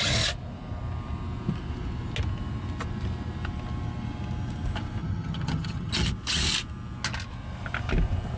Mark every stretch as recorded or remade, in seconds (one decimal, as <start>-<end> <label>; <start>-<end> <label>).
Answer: 0.0-5.0 recorded; 5.0-5.9 remade; 5.9-8.4 recorded